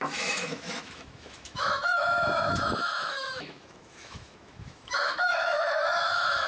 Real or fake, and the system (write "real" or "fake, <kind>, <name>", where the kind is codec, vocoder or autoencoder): fake, autoencoder, DAC-VAE